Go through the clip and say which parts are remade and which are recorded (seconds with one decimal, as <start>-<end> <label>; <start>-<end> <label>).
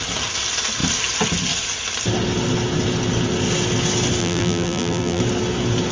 0.0-4.2 recorded; 4.2-5.2 remade; 5.2-5.9 recorded